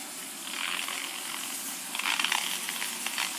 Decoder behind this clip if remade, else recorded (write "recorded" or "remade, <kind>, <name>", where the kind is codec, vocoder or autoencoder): recorded